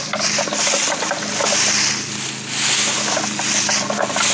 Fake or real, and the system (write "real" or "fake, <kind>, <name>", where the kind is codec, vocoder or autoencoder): real